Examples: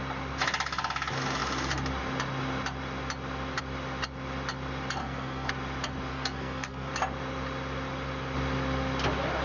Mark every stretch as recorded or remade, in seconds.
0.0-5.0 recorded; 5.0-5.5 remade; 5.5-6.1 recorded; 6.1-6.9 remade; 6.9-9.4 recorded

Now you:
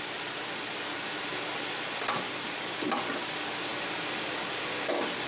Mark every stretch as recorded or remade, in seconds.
0.0-5.3 recorded

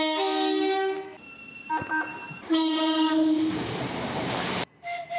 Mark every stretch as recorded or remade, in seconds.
0.0-2.1 recorded; 2.1-4.7 remade; 4.7-5.2 recorded

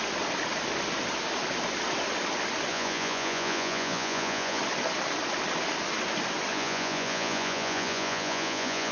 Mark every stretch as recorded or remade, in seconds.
0.0-2.7 recorded; 2.7-4.6 remade; 4.6-6.5 recorded; 6.5-8.9 remade

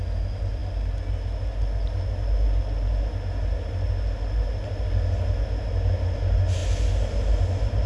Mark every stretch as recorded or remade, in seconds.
0.0-7.9 recorded